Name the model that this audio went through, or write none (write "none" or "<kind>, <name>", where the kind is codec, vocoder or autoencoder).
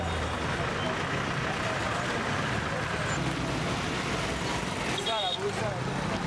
none